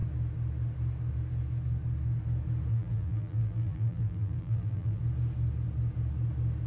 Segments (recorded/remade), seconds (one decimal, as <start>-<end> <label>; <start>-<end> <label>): 0.0-2.7 recorded; 2.7-5.0 remade; 5.0-6.7 recorded